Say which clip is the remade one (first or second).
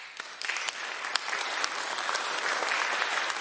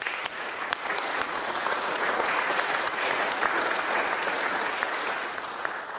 second